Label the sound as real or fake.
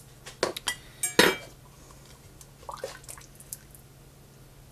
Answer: real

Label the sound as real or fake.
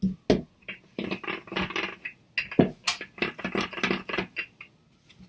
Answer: real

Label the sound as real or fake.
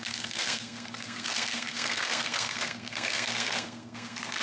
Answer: fake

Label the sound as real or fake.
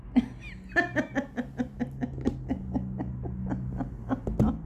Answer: real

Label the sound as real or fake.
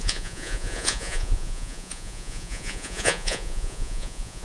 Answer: fake